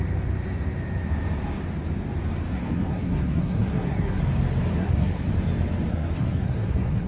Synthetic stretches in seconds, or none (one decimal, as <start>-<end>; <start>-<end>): 2.5-4.2; 4.7-5.3; 5.9-7.1